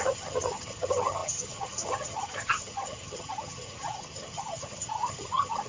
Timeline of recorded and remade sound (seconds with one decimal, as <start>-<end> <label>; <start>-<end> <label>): 0.0-5.7 remade